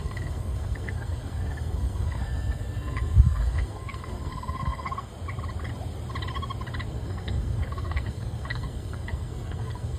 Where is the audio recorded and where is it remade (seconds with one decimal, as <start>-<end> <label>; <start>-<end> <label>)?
0.0-5.1 remade; 5.1-6.9 recorded; 6.9-10.0 remade